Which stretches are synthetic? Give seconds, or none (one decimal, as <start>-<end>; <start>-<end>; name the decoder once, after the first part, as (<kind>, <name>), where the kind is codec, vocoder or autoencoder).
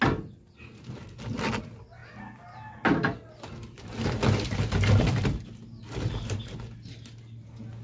none